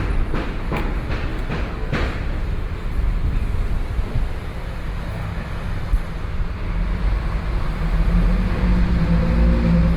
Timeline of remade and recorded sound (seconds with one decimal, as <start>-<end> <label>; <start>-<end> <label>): 0.0-10.0 recorded